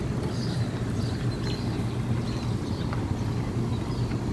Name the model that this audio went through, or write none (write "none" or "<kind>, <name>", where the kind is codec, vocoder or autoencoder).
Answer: none